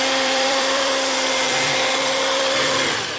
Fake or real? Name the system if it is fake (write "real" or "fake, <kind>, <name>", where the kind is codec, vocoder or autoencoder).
fake, vocoder, BigVGAN v2